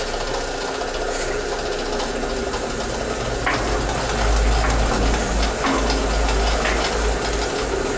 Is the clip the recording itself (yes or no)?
yes